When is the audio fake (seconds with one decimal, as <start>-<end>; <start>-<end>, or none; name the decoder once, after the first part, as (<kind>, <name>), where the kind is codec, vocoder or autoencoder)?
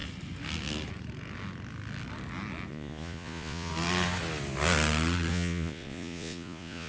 2.7-3.7 (vocoder, Vocos); 5.3-6.9